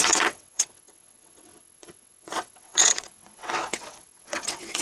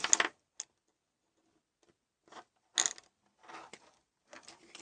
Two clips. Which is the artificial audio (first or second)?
first